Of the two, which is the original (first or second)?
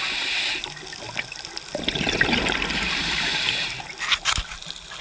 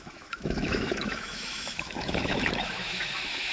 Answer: first